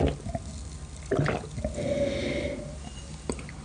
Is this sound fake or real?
real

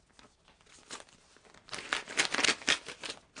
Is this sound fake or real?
real